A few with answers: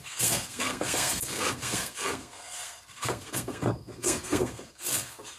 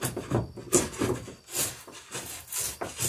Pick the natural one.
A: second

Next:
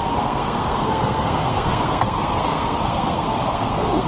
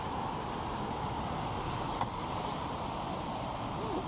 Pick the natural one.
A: second